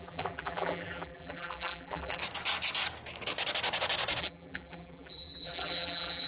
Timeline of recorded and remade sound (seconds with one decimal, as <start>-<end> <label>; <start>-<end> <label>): 0.0-2.2 remade; 2.2-4.2 recorded; 4.2-6.3 remade